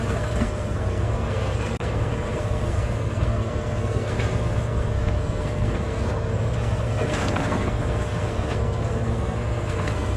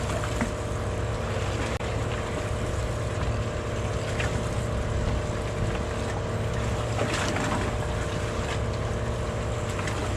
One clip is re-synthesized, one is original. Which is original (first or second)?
second